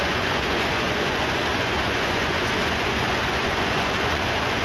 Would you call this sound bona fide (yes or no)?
no